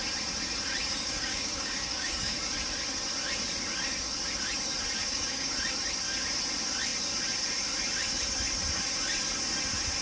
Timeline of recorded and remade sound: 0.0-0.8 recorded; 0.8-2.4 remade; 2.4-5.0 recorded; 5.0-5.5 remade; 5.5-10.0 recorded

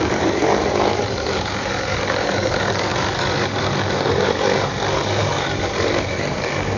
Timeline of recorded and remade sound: 0.0-6.8 remade

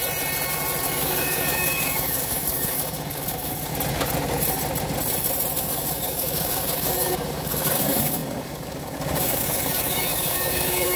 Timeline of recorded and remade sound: 0.0-0.9 recorded; 0.9-3.7 remade; 3.7-5.6 recorded; 5.6-11.0 remade